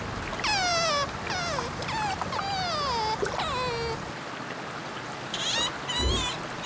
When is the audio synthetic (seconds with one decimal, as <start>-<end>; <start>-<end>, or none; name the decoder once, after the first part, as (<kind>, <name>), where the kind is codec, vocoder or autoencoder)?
none